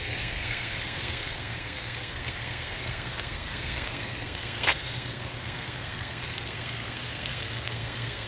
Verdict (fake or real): fake